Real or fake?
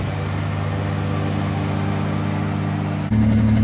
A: real